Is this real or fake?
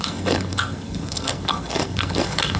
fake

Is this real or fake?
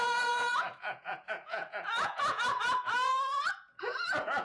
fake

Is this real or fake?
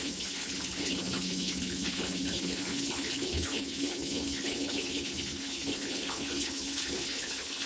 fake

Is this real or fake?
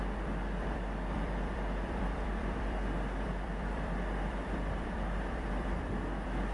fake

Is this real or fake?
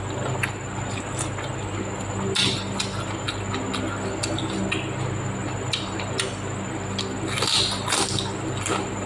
real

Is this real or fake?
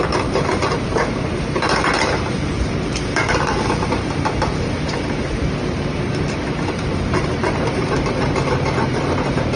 fake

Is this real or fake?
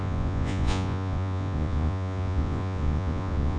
fake